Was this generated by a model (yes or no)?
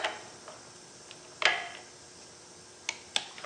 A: no